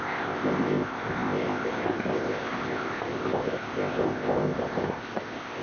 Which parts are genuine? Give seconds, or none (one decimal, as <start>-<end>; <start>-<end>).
none